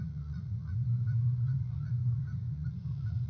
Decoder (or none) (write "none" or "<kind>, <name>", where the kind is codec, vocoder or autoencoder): vocoder, Vocos